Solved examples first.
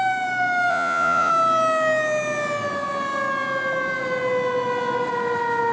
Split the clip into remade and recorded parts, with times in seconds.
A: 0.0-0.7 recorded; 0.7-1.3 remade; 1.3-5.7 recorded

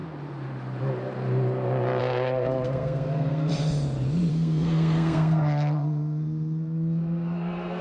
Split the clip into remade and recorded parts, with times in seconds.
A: 0.0-2.0 recorded; 2.0-3.5 remade; 3.5-4.3 recorded; 4.3-7.8 remade

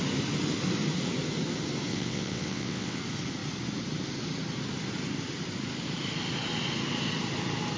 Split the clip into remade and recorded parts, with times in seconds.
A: 0.0-1.9 recorded; 1.9-3.0 remade; 3.0-7.8 recorded

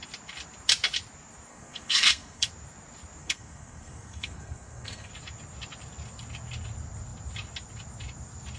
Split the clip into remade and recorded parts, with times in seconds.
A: 0.0-1.5 recorded; 1.5-2.5 remade; 2.5-3.2 recorded; 3.2-5.1 remade; 5.1-8.6 recorded

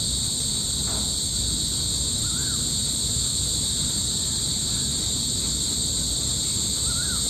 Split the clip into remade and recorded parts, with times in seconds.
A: 0.0-7.3 recorded